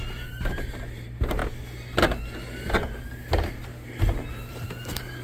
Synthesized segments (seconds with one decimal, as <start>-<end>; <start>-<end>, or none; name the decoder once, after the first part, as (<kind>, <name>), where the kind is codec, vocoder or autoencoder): 0.0-1.4 (vocoder, BigVGAN v2); 4.5-5.2